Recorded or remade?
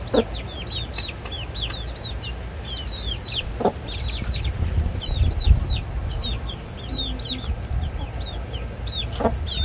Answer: recorded